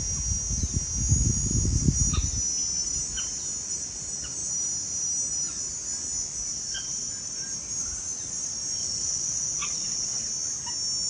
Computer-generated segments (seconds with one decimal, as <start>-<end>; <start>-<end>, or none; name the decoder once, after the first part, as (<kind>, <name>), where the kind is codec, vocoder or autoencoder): 6.5-7.1 (vocoder, WaveNeXt); 8.8-10.3